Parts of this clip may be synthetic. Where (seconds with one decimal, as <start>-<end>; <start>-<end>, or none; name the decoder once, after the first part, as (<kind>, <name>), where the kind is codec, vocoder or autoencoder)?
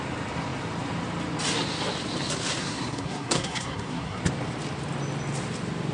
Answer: 2.6-4.2 (codec, SNAC)